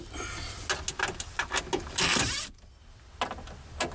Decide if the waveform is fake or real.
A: real